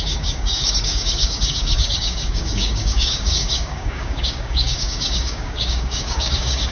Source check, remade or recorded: remade